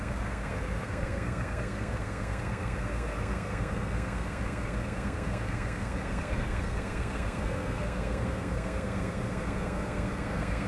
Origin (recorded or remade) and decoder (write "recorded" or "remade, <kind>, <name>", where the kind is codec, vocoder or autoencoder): remade, codec, SNAC